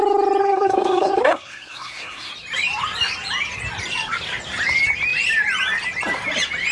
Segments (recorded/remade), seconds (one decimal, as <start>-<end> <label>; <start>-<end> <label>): 0.0-0.4 recorded; 0.4-2.3 remade; 2.3-6.7 recorded